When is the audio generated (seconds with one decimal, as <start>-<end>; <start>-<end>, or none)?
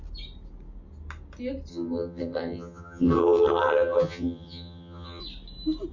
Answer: 1.7-5.2